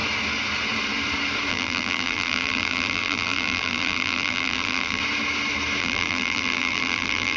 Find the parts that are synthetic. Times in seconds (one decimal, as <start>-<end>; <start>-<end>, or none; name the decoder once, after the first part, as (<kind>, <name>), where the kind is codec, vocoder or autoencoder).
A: 1.5-5.0 (vocoder, BigVGAN v2); 5.8-7.4